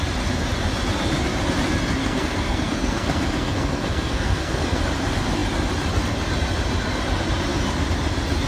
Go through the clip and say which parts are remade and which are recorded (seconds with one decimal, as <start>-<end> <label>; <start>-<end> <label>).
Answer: 0.0-2.0 recorded; 2.0-4.8 remade; 4.8-8.5 recorded